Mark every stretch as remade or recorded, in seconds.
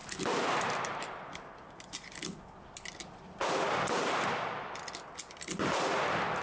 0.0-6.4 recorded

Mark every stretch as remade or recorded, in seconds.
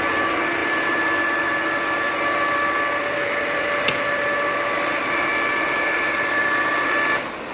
0.0-7.5 recorded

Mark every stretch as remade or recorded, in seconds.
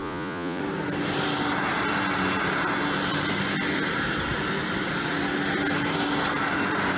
0.0-0.6 remade; 0.6-7.0 recorded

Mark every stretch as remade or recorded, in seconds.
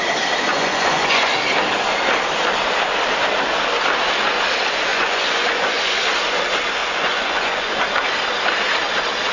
0.0-0.5 recorded; 0.5-1.3 remade; 1.3-4.9 recorded; 4.9-6.0 remade; 6.0-6.8 recorded; 6.8-7.7 remade; 7.7-9.3 recorded